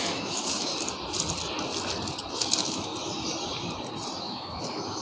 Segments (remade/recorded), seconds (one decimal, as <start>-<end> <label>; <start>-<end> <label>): 0.0-0.7 remade; 0.7-2.3 recorded; 2.3-2.9 remade; 2.9-4.2 recorded; 4.2-5.0 remade